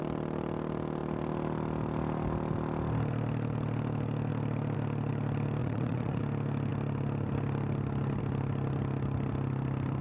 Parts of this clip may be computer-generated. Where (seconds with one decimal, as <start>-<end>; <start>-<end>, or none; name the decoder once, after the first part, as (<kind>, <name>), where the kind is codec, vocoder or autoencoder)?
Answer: 5.6-6.2 (vocoder, Vocos)